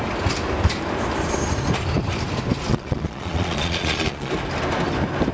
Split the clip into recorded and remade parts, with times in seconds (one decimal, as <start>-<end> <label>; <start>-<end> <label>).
0.0-2.7 recorded; 2.7-4.3 remade; 4.3-5.3 recorded

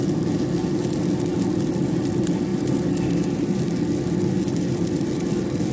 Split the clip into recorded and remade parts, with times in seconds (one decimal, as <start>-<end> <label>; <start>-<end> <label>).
0.0-5.7 recorded

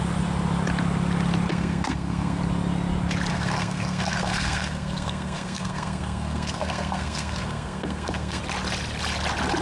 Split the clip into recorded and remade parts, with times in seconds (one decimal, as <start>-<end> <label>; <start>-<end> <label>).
0.0-1.5 recorded; 1.5-2.4 remade; 2.4-3.3 recorded; 3.3-8.4 remade; 8.4-9.6 recorded

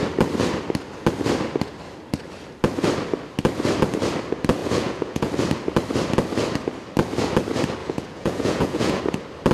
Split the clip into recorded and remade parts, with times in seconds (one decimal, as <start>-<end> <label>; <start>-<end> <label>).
0.0-4.6 recorded; 4.6-5.3 remade; 5.3-7.8 recorded; 7.8-9.0 remade; 9.0-9.5 recorded